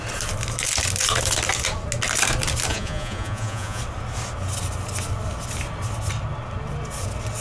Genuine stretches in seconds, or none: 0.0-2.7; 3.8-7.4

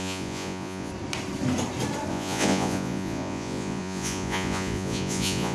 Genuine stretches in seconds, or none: 0.9-2.1

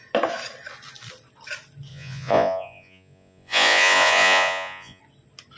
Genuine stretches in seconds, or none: 0.0-1.9; 5.0-5.6

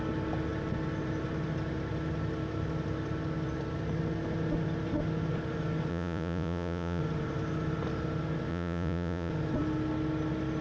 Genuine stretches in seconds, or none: 0.0-5.9; 7.0-8.5; 9.3-10.6

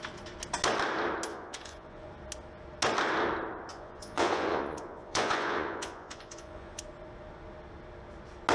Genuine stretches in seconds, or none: 0.0-1.3; 2.1-3.7; 6.8-8.5

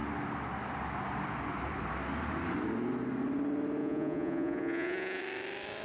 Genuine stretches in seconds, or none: 0.0-3.8; 5.2-5.8

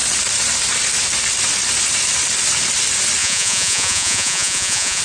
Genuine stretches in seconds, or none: 0.0-3.2